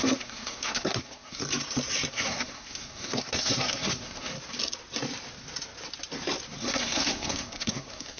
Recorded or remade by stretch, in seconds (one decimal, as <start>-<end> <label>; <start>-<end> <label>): 0.0-1.4 remade; 1.4-2.1 recorded; 2.1-4.3 remade; 4.3-6.6 recorded; 6.6-8.2 remade